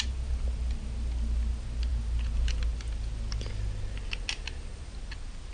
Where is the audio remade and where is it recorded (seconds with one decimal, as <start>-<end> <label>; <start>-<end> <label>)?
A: 0.0-5.5 recorded